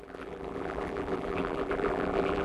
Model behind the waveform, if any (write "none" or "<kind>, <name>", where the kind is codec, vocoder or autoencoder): vocoder, BigVGAN v2